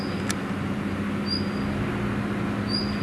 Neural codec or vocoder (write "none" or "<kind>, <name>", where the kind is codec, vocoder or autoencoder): none